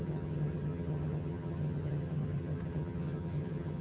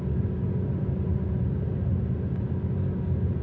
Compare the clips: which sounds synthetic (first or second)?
first